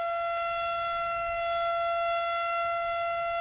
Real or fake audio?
real